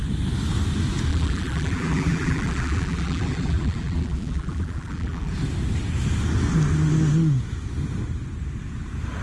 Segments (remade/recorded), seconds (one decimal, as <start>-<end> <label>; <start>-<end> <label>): 0.0-1.1 recorded; 1.1-5.3 remade; 5.3-9.2 recorded